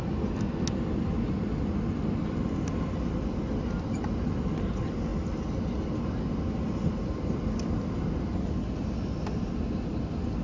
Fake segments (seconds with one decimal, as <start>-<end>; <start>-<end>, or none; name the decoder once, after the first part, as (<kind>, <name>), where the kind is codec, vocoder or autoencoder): none